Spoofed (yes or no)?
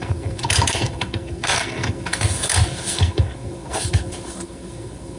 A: yes